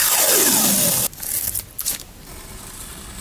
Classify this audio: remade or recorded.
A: recorded